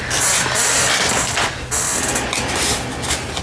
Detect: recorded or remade recorded